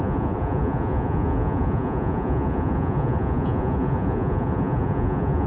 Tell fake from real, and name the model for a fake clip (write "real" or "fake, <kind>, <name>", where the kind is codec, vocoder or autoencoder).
fake, vocoder, Vocos